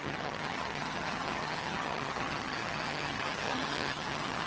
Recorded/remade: remade